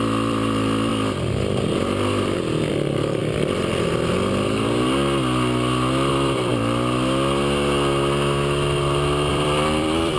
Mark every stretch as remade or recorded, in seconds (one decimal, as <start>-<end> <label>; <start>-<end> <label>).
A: 0.0-0.9 remade; 0.9-2.7 recorded; 2.7-3.2 remade; 3.2-6.1 recorded; 6.1-6.5 remade; 6.5-9.3 recorded; 9.3-10.2 remade